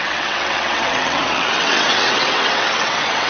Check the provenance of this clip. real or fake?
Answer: fake